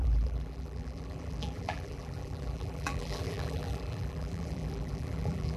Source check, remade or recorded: remade